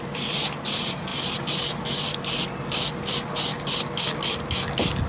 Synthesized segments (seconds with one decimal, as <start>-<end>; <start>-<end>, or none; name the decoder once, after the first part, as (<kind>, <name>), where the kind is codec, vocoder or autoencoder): none